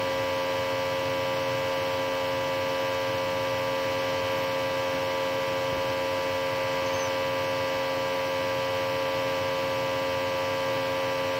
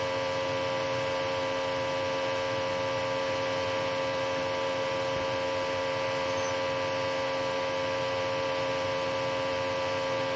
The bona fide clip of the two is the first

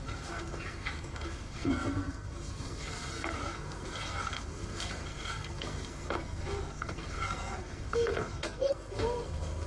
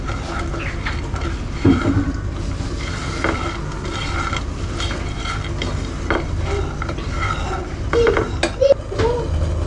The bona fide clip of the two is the second